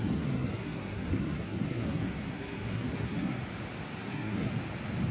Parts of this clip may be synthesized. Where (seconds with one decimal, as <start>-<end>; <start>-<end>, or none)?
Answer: 0.0-3.4; 4.0-4.5